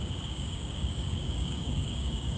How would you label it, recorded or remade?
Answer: remade